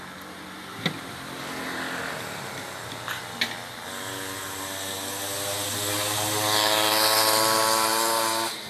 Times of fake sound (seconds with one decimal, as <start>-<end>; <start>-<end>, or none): none